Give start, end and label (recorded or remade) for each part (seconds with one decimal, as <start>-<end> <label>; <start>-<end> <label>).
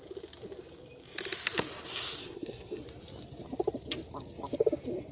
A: 0.0-2.2 recorded; 2.2-2.8 remade; 2.8-5.1 recorded